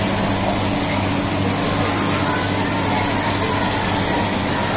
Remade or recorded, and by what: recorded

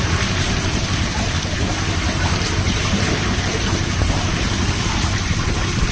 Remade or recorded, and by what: remade, vocoder, BigVGAN v2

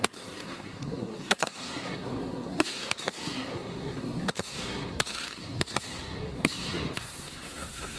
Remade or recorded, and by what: remade, codec, SNAC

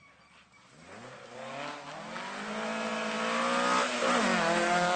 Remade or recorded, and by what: recorded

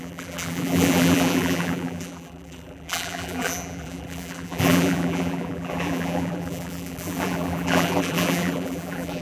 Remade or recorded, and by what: remade, vocoder, BigVGAN v2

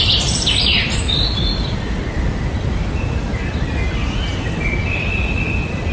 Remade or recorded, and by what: recorded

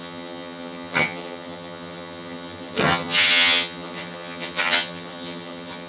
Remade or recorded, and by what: remade, vocoder, HiFi-GAN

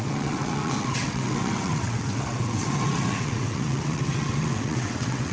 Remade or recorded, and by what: remade, vocoder, WaveNeXt